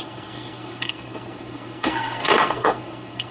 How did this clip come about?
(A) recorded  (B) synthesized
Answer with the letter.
B